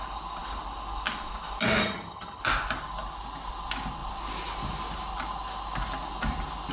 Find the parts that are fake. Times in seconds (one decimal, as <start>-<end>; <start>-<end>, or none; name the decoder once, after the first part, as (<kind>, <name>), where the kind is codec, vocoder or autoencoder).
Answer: 1.8-2.4 (vocoder, HiFi-GAN)

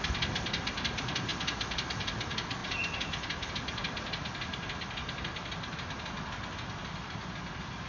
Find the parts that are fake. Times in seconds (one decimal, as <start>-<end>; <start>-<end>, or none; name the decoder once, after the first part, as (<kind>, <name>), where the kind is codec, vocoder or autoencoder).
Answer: none

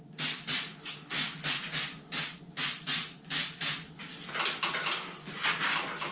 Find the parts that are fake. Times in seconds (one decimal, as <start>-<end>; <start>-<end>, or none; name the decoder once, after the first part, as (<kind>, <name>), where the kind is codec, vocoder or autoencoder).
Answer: none

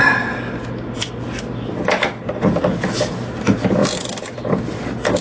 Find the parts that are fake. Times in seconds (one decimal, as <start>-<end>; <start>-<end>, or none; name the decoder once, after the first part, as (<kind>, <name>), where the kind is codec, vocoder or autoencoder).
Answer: none

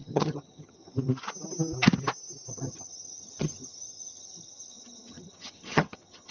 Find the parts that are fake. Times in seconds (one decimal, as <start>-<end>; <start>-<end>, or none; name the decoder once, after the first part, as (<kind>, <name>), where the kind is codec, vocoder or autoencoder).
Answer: 0.0-0.9 (vocoder, HiFi-GAN); 2.5-6.3